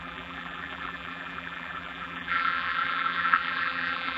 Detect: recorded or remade remade